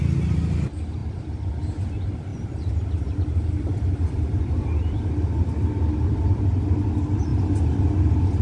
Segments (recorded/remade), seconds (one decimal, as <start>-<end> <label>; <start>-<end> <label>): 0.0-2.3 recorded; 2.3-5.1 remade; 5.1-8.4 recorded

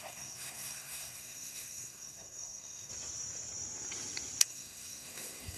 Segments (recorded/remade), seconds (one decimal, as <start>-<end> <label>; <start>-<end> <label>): 0.0-2.9 remade; 2.9-4.4 recorded; 4.4-5.6 remade

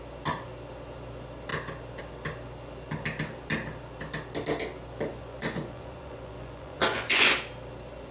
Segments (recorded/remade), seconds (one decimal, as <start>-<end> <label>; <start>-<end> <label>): 0.0-5.1 recorded; 5.1-7.3 remade; 7.3-8.1 recorded